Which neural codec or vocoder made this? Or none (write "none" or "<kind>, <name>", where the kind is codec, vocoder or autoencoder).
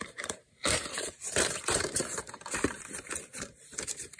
vocoder, BigVGAN v2